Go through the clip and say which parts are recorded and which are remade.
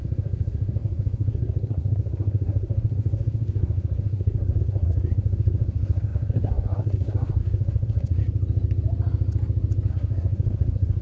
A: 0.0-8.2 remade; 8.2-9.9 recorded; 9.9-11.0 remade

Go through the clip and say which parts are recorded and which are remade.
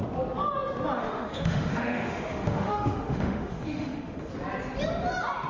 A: 0.0-1.0 recorded; 1.0-4.3 remade; 4.3-5.5 recorded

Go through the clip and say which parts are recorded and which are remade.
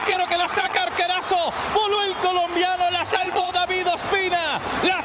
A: 0.0-0.8 remade; 0.8-3.1 recorded; 3.1-3.5 remade; 3.5-5.0 recorded